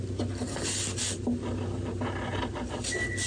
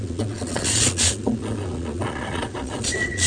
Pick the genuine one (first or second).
first